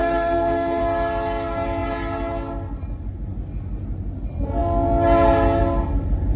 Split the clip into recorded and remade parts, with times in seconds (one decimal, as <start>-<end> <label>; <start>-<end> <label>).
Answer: 0.0-0.8 remade; 0.8-6.4 recorded